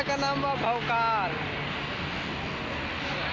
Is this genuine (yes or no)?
yes